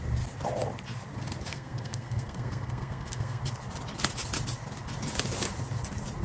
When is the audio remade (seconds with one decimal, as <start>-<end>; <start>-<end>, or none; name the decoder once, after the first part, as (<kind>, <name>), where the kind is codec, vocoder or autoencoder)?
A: 1.5-3.4 (codec, SNAC)